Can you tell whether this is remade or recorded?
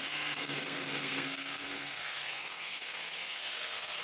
remade